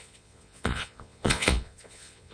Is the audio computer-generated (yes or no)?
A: yes